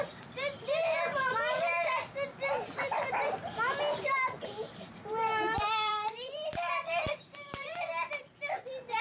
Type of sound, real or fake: fake